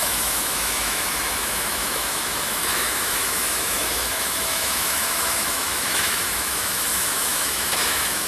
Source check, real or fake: fake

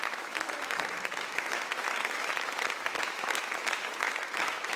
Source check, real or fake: fake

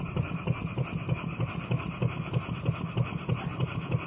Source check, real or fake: real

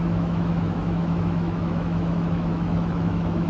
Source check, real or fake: fake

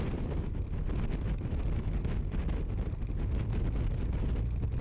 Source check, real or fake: real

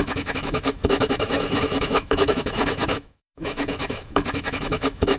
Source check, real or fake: fake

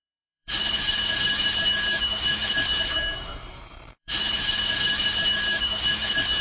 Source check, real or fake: fake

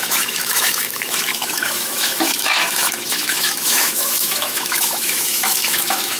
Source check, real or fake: fake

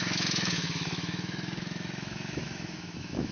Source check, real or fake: fake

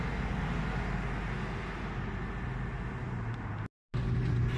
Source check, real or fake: real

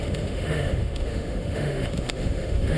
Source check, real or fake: fake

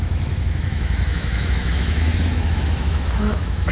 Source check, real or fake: fake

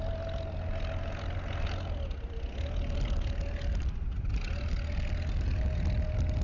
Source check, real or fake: real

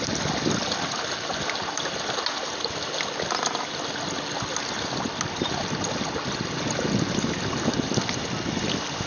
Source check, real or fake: real